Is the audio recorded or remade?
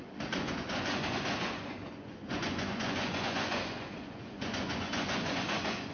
remade